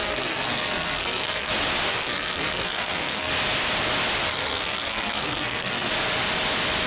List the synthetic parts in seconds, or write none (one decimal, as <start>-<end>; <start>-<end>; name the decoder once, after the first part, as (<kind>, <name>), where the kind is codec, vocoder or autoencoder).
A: 0.0-1.5 (codec, SNAC); 1.9-3.3; 4.3-5.9